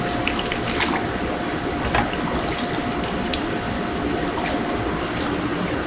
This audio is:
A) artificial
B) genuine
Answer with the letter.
B